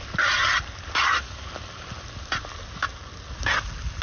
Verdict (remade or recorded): recorded